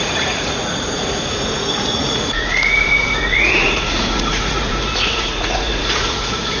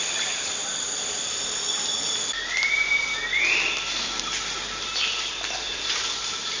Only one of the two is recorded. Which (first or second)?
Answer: second